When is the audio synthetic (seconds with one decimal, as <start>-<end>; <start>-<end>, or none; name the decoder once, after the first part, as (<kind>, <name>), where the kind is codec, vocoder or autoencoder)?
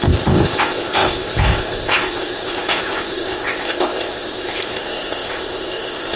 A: 0.0-6.2 (codec, ZipCodec)